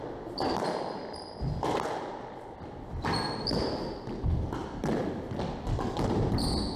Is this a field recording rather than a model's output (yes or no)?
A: yes